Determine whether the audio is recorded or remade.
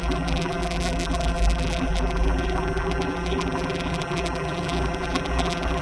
remade